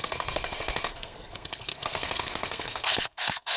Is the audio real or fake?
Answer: fake